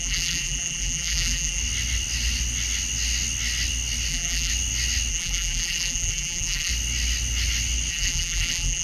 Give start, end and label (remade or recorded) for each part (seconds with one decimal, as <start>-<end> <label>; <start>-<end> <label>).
0.0-1.6 remade; 1.6-4.1 recorded; 4.1-4.5 remade; 4.5-5.1 recorded; 5.1-6.7 remade; 6.7-7.9 recorded; 7.9-8.8 remade